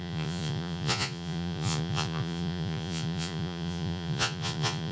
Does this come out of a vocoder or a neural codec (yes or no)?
yes